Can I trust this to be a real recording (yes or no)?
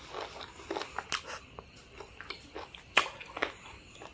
yes